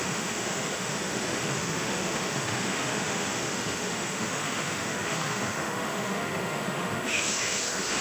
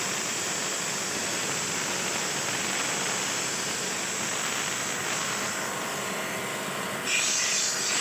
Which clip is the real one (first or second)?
second